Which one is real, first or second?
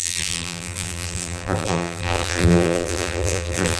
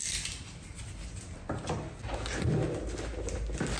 second